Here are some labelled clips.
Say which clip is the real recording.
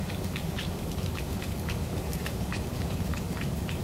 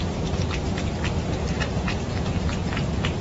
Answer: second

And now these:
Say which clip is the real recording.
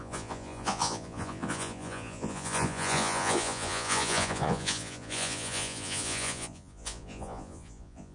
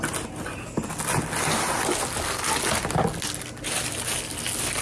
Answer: second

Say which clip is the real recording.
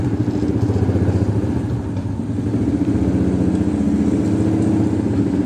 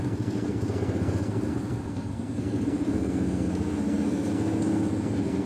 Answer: first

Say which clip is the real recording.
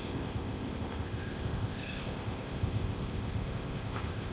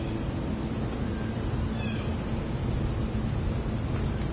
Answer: second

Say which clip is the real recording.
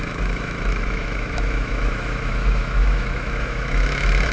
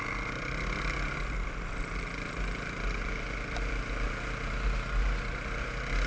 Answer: second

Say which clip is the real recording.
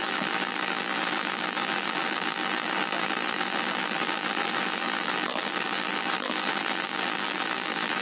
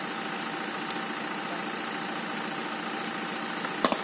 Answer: second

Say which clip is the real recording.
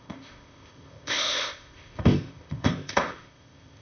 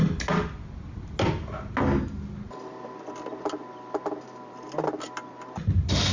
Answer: second